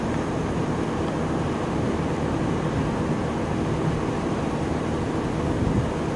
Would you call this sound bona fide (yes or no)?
yes